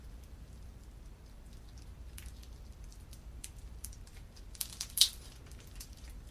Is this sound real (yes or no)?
no